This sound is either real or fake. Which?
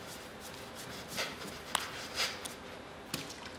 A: real